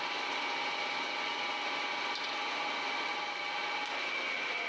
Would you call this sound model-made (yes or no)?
no